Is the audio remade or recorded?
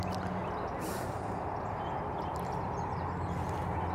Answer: recorded